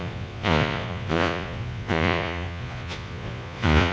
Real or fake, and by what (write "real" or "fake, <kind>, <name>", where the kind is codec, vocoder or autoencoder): fake, vocoder, Vocos